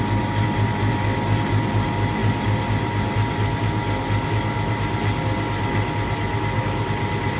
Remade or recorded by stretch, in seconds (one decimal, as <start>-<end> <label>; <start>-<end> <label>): 0.0-7.4 recorded